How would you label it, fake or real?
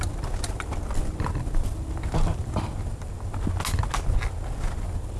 real